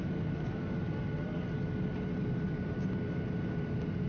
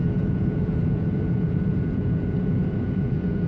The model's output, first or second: second